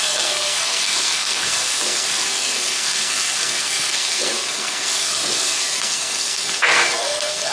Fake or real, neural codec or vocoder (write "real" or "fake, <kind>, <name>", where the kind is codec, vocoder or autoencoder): fake, codec, SNAC